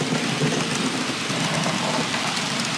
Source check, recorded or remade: recorded